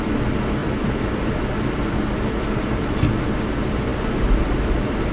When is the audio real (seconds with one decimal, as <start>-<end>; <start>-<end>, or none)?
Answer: 0.0-0.6; 1.3-3.9